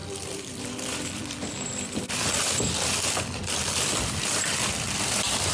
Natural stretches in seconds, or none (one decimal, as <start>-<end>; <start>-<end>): none